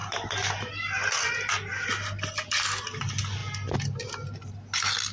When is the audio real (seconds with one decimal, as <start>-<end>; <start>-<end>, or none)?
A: 0.7-1.7; 3.0-5.1